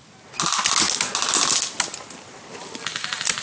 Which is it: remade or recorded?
recorded